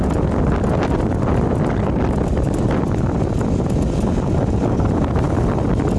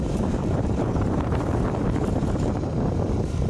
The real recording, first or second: first